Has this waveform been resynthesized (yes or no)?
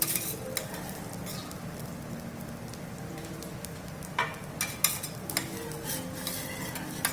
no